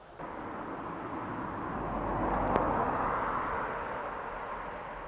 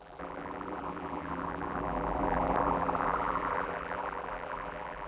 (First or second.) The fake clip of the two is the second